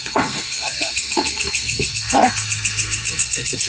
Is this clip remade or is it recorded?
remade